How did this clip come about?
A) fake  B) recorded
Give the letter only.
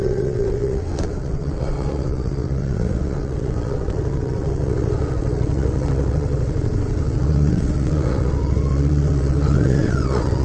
A